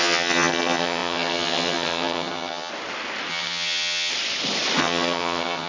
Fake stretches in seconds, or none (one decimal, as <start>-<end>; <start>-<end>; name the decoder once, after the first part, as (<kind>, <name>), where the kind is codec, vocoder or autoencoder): 0.0-2.7 (vocoder, HiFi-GAN); 3.3-4.1; 4.8-5.7